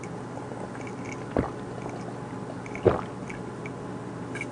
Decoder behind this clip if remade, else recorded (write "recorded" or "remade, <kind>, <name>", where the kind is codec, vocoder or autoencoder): recorded